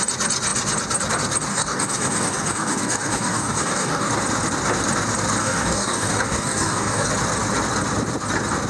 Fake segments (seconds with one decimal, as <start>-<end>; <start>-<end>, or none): 1.5-4.1; 5.4-7.1